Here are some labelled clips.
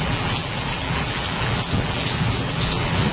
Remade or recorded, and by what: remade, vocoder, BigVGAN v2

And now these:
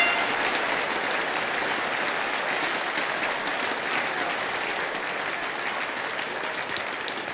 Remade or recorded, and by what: recorded